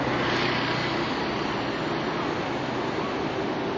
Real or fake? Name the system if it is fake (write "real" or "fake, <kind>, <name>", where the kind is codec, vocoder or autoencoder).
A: real